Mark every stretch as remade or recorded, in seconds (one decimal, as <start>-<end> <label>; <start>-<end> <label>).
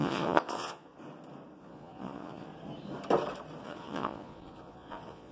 0.0-0.9 remade; 0.9-1.6 recorded; 1.6-2.5 remade; 2.5-3.6 recorded; 3.6-5.3 remade